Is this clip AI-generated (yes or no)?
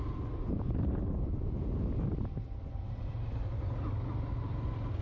no